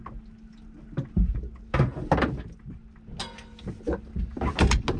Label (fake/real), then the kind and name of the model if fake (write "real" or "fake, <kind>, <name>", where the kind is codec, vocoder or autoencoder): real